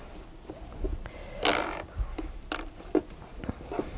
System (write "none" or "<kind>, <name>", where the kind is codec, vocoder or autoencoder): none